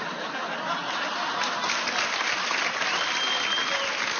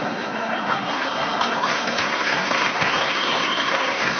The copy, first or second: second